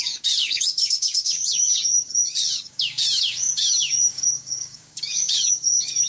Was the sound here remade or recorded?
remade